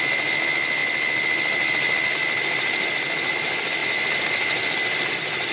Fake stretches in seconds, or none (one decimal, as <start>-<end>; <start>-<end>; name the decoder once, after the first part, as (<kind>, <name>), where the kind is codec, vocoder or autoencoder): none